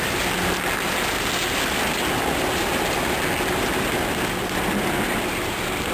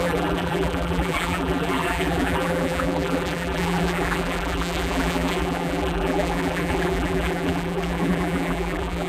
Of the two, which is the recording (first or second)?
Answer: first